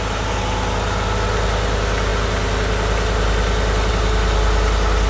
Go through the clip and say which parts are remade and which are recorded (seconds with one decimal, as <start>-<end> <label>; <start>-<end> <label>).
0.0-5.1 recorded